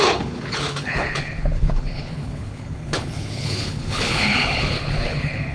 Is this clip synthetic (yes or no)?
yes